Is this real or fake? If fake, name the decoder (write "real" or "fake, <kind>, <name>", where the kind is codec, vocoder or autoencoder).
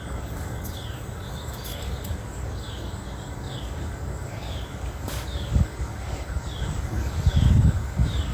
fake, codec, DAC